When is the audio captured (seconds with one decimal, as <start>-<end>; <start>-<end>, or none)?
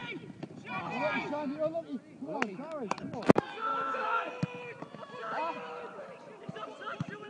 0.0-3.7; 4.3-7.3